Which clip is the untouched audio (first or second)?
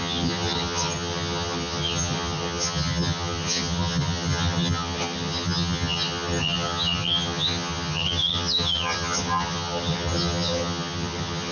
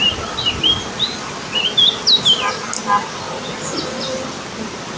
second